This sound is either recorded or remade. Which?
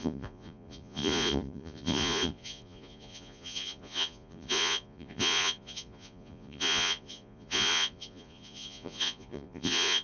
remade